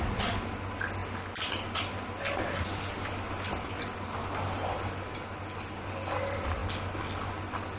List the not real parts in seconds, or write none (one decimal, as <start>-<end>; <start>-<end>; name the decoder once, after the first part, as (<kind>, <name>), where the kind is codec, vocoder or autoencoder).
none